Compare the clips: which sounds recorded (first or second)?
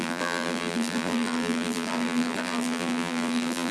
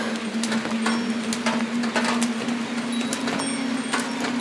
second